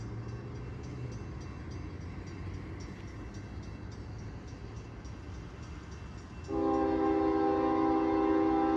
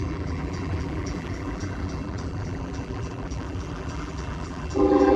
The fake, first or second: second